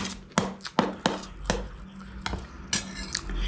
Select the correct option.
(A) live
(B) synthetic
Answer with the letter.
A